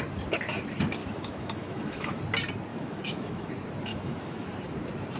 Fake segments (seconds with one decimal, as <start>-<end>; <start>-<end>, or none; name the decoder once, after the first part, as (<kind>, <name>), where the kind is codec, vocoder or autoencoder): 1.0-2.2 (autoencoder, DAC-VAE); 2.7-3.5; 3.9-4.5